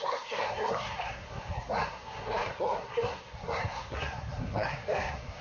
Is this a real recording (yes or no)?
no